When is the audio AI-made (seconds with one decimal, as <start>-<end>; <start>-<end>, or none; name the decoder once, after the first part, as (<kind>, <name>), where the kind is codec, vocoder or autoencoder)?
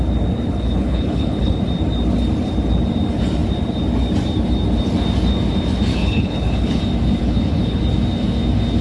0.5-1.6 (codec, HILCodec); 5.9-6.8; 7.2-7.8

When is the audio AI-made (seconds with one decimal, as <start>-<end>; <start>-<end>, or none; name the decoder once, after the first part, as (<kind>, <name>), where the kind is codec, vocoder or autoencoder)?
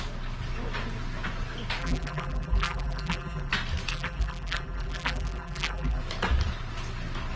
1.8-3.5 (vocoder, BigVGAN v2); 3.9-6.0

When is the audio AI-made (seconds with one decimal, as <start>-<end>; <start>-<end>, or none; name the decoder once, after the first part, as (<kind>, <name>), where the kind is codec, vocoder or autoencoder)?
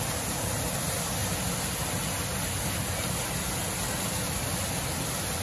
none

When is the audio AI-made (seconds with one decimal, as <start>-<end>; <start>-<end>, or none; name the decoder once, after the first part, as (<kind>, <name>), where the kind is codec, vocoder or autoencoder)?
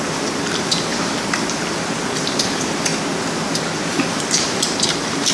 0.0-2.9 (vocoder, BigVGAN v2); 4.1-5.3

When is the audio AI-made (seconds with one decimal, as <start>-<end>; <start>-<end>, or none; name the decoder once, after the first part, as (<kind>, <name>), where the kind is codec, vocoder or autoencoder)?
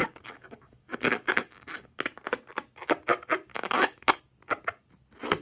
0.0-2.0 (codec, DAC); 3.5-4.2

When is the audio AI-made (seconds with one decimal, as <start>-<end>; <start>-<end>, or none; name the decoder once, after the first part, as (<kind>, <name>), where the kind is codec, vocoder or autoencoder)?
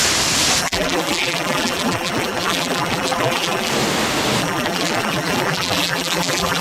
0.6-3.7 (vocoder, BigVGAN v2); 4.4-6.6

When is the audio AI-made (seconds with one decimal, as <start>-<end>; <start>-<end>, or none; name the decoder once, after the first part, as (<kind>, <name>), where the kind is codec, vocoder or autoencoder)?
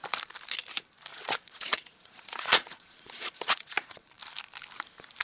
1.1-4.2 (vocoder, Vocos)